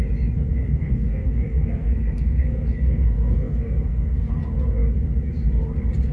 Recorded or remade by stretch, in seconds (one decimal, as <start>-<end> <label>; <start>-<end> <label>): 0.0-0.6 recorded; 0.6-4.3 remade; 4.3-6.1 recorded

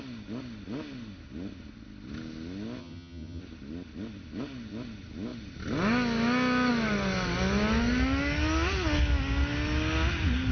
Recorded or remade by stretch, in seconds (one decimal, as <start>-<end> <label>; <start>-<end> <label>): 0.0-2.8 recorded; 2.8-3.4 remade; 3.4-10.5 recorded

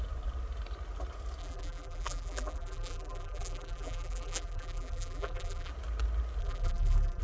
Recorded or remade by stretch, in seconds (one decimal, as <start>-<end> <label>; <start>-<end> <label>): 0.0-1.4 recorded; 1.4-5.7 remade; 5.7-6.4 recorded; 6.4-7.2 remade

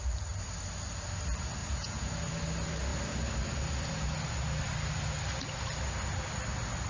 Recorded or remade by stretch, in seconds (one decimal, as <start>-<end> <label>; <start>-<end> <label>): 0.0-1.6 recorded; 1.6-2.2 remade; 2.2-6.9 recorded

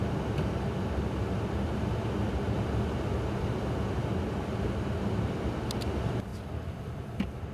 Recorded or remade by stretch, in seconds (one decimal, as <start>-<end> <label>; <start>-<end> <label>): 0.0-7.5 recorded

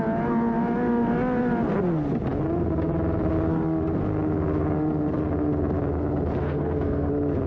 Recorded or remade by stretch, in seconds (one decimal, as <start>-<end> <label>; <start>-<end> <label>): 0.0-6.4 recorded; 6.4-7.1 remade; 7.1-7.5 recorded

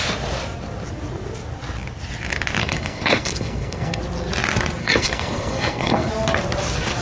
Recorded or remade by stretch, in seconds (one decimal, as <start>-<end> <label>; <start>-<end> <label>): 0.0-2.6 recorded; 2.6-4.0 remade; 4.0-4.8 recorded; 4.8-6.1 remade; 6.1-7.0 recorded